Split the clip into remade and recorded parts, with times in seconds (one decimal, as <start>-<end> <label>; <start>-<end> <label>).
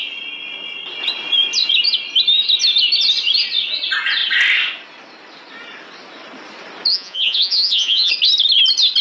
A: 0.0-6.9 recorded; 6.9-8.1 remade; 8.1-9.0 recorded